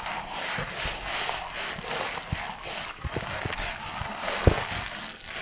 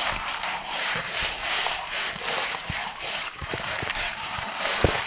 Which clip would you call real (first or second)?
first